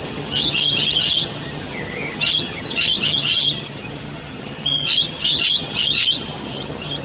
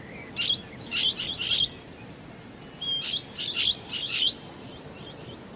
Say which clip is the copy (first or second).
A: first